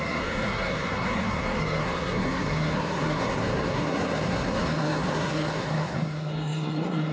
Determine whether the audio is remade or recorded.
remade